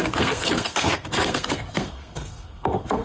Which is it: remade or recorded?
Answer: remade